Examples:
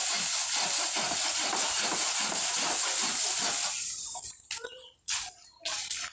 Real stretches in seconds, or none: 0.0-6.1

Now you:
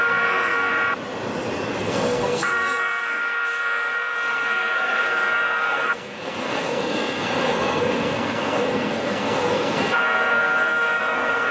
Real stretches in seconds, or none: 0.7-1.8